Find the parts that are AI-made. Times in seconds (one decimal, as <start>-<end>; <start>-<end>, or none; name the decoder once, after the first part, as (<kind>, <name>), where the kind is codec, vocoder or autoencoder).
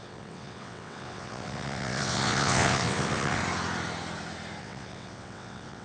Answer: 0.0-3.4 (vocoder, WaveNeXt); 4.6-5.8